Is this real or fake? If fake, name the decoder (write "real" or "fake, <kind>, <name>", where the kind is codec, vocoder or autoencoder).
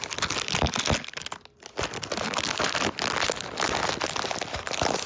real